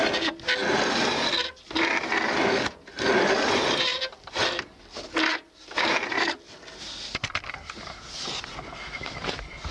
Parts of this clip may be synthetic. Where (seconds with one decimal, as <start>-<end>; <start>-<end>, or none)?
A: none